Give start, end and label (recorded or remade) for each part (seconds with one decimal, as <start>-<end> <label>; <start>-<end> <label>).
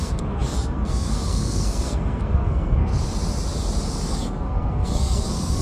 0.0-2.9 remade; 2.9-4.1 recorded; 4.1-5.6 remade